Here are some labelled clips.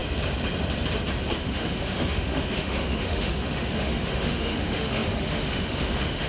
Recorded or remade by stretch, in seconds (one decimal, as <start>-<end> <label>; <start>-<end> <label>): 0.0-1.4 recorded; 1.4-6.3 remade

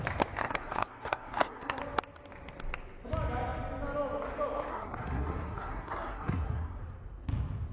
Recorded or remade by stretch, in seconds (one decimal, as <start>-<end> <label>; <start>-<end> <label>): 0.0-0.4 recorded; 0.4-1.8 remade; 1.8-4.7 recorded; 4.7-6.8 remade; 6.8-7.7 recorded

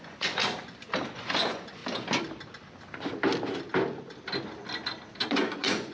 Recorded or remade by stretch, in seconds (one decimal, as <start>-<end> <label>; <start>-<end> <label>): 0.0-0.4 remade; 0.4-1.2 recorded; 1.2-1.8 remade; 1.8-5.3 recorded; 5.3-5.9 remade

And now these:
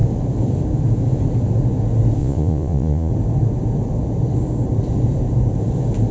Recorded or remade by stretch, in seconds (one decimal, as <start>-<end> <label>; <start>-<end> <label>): 0.0-2.2 recorded; 2.2-3.1 remade; 3.1-6.1 recorded

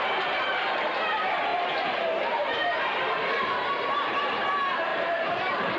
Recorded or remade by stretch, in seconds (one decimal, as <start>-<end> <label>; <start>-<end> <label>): 0.0-1.5 recorded; 1.5-4.1 remade; 4.1-4.9 recorded; 4.9-5.8 remade